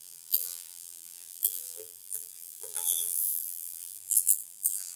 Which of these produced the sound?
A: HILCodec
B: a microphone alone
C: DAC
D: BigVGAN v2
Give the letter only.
D